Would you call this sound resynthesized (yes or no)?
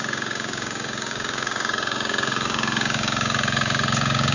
yes